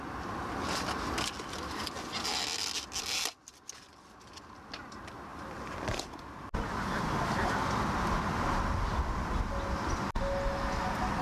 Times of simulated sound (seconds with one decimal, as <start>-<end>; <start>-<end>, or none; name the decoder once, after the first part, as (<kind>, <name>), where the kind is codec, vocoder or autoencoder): none